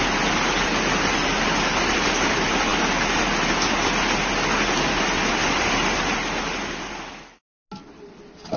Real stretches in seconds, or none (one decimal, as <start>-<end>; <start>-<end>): 0.0-8.6